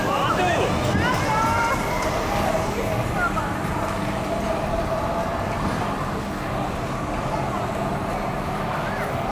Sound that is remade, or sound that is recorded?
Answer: recorded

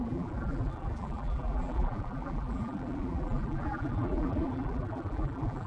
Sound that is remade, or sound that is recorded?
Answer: remade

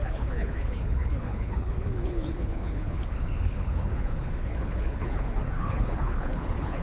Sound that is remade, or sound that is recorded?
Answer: remade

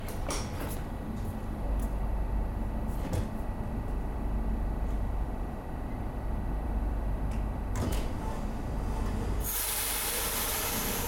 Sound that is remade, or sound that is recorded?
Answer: remade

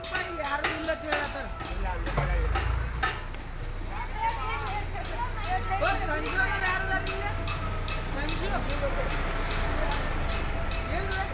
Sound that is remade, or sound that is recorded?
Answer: recorded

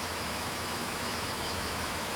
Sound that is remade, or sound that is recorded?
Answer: remade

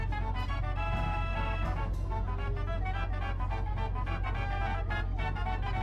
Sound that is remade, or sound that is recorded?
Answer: recorded